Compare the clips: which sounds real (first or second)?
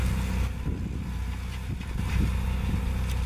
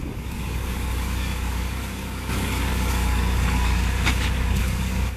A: first